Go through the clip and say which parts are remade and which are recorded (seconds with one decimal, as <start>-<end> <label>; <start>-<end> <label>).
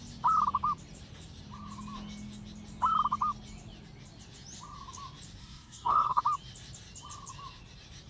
0.0-5.4 recorded; 5.4-6.2 remade; 6.2-8.1 recorded